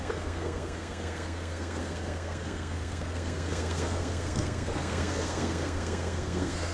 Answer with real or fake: fake